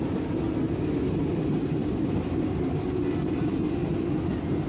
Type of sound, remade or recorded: recorded